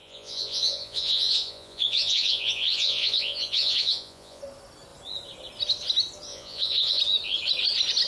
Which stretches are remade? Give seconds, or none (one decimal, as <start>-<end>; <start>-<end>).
0.0-4.4; 6.3-7.0